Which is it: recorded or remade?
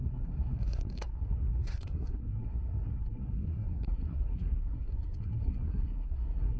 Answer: remade